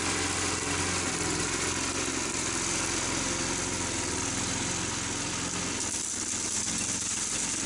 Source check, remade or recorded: recorded